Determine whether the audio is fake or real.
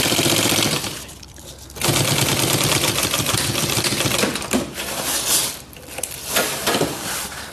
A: fake